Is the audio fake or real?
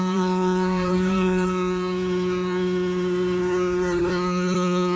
fake